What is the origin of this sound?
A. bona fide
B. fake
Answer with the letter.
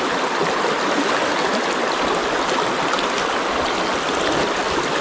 A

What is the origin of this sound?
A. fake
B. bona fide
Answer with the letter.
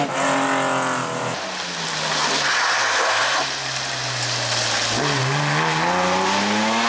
B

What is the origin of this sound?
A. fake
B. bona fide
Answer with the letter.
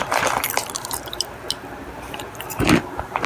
A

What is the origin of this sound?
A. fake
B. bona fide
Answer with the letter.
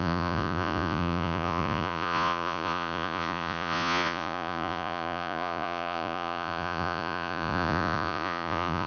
A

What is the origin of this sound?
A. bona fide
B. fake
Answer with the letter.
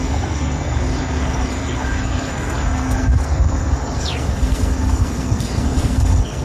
B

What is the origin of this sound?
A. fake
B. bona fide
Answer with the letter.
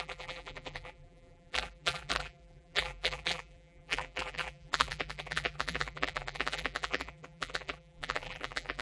A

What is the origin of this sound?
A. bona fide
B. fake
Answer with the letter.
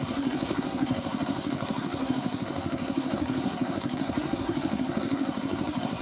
B